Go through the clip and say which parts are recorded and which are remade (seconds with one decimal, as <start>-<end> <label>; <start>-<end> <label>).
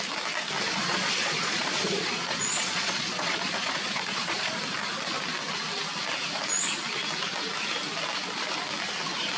0.0-0.9 recorded; 0.9-4.6 remade; 4.6-9.4 recorded